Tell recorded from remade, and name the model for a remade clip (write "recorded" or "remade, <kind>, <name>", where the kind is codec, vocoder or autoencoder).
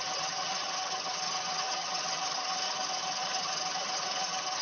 remade, vocoder, HiFi-GAN